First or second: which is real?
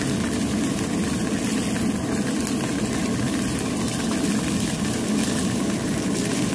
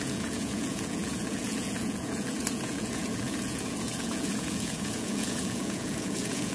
first